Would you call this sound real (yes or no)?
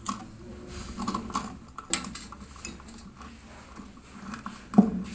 yes